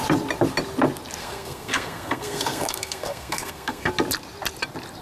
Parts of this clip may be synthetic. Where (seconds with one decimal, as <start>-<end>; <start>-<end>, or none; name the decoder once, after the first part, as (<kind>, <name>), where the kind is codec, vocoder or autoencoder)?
1.2-3.9 (codec, SNAC)